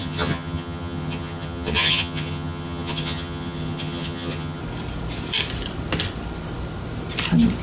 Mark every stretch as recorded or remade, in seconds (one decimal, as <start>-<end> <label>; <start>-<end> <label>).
0.0-4.6 remade; 4.6-7.6 recorded